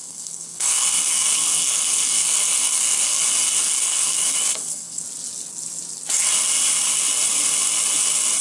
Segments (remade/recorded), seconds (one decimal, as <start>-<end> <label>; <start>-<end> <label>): 0.0-3.2 remade; 3.2-3.6 recorded; 3.6-5.0 remade; 5.0-8.4 recorded